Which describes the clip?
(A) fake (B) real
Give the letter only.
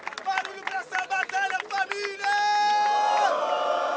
B